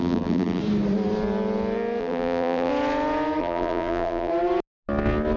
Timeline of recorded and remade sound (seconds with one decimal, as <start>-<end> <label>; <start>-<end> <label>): 0.0-0.6 remade; 0.6-2.0 recorded; 2.0-2.7 remade; 2.7-3.4 recorded; 3.4-4.3 remade; 4.3-5.4 recorded